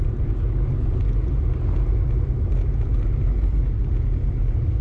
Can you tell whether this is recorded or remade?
recorded